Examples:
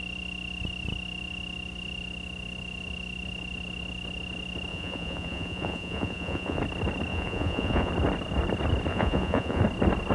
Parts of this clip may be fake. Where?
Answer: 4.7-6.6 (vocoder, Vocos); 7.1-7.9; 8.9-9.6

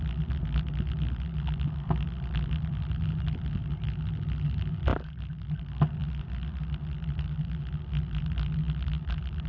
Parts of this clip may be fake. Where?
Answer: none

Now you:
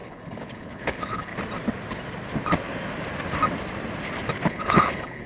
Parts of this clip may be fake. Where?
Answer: 0.0-1.3 (codec, HILCodec); 4.5-5.3